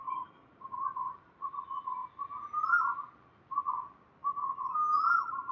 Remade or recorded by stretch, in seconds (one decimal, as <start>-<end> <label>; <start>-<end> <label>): 0.0-0.5 remade; 0.5-4.2 recorded; 4.2-5.0 remade; 5.0-5.5 recorded

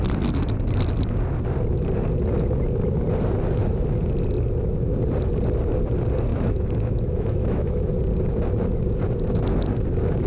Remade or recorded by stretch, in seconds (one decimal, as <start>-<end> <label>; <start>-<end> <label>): 0.0-6.3 recorded; 6.3-7.9 remade; 7.9-10.3 recorded

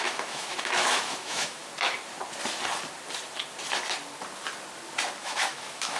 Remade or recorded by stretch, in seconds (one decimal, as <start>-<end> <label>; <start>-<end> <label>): 0.0-1.6 remade; 1.6-5.2 recorded; 5.2-6.0 remade

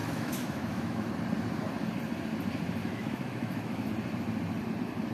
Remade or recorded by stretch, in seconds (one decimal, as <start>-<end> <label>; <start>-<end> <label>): 0.0-1.1 remade; 1.1-2.8 recorded; 2.8-3.9 remade; 3.9-5.1 recorded

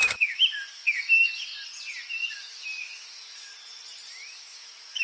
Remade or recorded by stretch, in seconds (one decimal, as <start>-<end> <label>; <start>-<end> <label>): 0.0-1.5 remade; 1.5-2.3 recorded; 2.3-3.5 remade; 3.5-4.1 recorded; 4.1-5.0 remade